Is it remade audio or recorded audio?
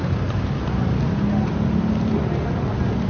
recorded